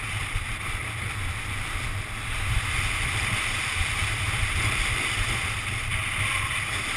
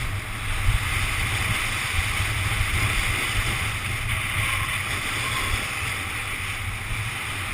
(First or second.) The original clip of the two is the second